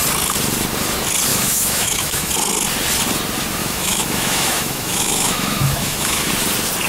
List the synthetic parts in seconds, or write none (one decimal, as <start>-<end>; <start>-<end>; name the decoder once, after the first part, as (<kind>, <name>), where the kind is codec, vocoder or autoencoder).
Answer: 1.3-2.3 (autoencoder, DAC-VAE); 3.6-6.3